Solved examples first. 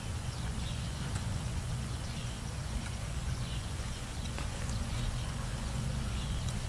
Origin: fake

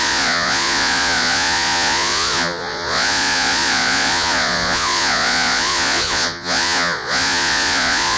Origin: fake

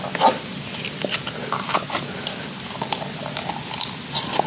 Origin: real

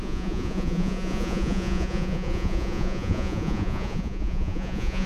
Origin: fake